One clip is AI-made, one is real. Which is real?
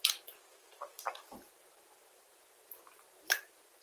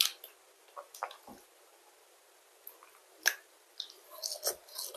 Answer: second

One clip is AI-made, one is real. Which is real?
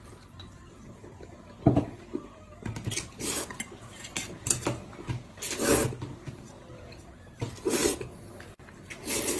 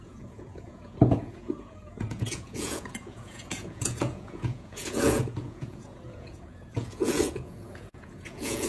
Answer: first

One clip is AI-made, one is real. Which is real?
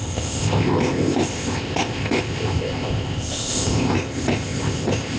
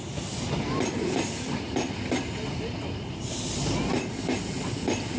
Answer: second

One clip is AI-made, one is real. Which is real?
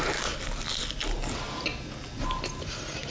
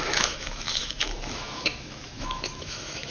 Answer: first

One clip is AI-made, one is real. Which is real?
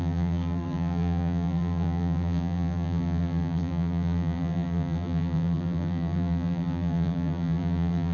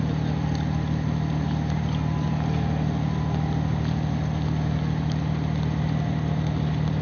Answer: second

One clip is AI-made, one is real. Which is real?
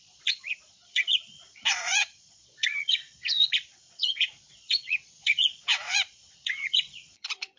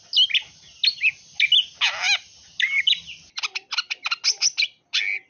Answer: second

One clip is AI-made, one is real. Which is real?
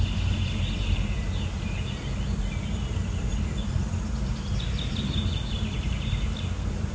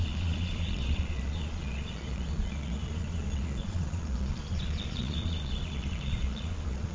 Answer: first